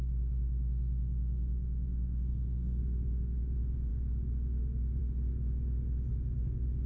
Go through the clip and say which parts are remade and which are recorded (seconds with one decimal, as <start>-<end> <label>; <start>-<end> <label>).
0.0-2.3 recorded; 2.3-2.8 remade; 2.8-6.9 recorded